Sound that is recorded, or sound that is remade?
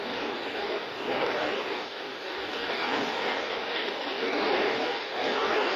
remade